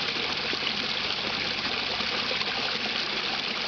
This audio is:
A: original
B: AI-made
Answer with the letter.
A